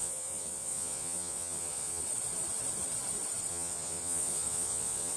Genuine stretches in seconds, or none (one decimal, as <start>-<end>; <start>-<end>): 2.0-3.5